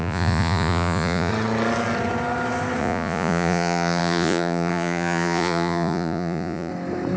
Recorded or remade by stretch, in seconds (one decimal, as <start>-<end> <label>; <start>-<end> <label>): 0.0-1.3 remade; 1.3-2.8 recorded; 2.8-6.7 remade; 6.7-7.2 recorded